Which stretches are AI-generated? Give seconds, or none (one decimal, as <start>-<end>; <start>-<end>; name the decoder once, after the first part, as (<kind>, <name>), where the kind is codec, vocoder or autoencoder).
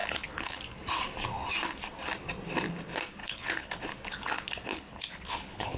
0.0-0.6 (codec, HILCodec); 3.2-3.8; 4.7-5.8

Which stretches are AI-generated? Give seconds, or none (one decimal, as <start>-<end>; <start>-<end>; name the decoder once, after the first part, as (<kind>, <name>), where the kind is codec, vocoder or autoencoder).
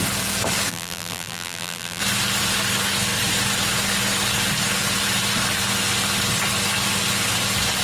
0.7-2.0 (vocoder, BigVGAN v2)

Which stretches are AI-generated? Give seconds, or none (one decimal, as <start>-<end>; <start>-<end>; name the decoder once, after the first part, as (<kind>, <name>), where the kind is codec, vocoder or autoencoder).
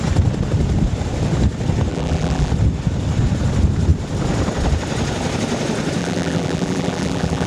1.9-2.5 (vocoder, BigVGAN v2); 6.0-7.5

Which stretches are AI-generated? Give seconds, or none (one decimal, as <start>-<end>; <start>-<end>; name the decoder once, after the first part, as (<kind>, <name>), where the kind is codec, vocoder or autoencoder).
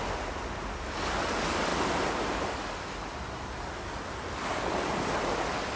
none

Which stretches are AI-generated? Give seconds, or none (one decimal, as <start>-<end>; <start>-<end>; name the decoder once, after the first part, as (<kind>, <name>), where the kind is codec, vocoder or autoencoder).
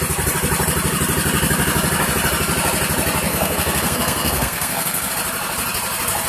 3.3-5.1 (codec, SNAC)